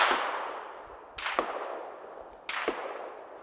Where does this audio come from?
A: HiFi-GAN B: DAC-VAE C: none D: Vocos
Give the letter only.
C